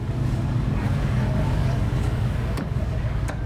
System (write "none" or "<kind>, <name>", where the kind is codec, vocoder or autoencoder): codec, DAC